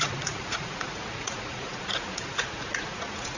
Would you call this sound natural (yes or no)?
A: no